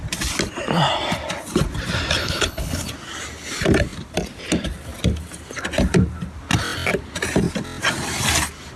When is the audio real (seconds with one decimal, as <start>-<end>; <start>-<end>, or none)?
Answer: 0.0-2.2; 2.9-8.8